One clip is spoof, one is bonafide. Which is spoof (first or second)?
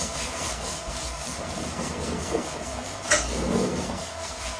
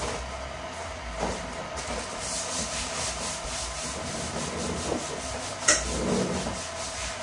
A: first